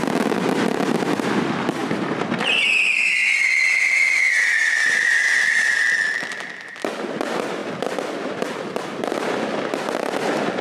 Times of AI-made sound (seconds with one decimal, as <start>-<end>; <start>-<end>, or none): none